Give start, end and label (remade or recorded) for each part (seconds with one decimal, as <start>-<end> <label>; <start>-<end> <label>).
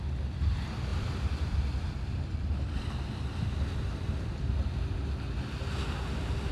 0.0-0.9 recorded; 0.9-2.9 remade; 2.9-6.5 recorded